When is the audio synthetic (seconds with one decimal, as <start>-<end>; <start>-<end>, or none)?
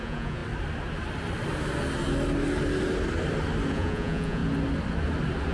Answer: 0.0-0.4; 3.7-4.4